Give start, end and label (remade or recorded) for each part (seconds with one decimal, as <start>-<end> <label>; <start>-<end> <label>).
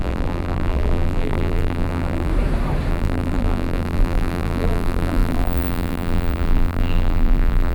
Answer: 0.0-2.3 remade; 2.3-2.9 recorded; 2.9-7.7 remade